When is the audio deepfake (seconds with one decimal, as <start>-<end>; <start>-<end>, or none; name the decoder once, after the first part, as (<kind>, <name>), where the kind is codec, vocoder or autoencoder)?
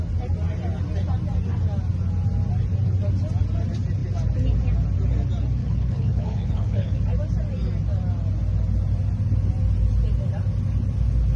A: 5.6-7.0 (codec, HILCodec)